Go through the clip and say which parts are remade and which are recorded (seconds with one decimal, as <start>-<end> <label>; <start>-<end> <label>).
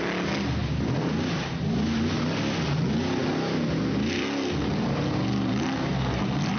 0.0-6.6 recorded